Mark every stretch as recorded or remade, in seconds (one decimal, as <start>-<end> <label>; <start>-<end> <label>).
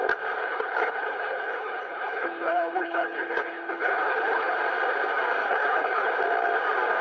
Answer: 0.0-0.4 recorded; 0.4-4.6 remade; 4.6-5.4 recorded; 5.4-6.1 remade; 6.1-7.0 recorded